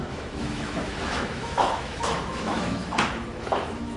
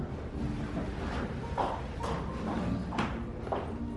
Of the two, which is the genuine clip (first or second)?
second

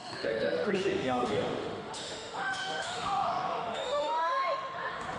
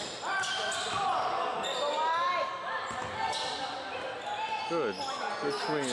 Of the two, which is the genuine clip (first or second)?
second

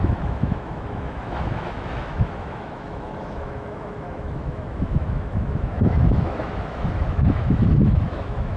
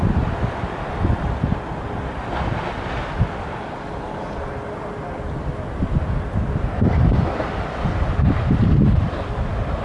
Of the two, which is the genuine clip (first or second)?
second